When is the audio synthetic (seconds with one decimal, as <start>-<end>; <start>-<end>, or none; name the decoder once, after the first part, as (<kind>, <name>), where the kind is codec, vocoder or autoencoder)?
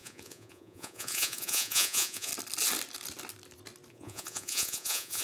0.0-2.3 (vocoder, Vocos); 3.9-5.2